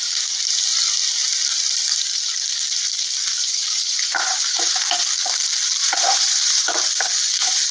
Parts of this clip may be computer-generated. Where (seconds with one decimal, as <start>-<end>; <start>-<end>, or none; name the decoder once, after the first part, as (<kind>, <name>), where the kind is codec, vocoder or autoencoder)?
3.4-4.7 (vocoder, BigVGAN v2); 5.8-6.6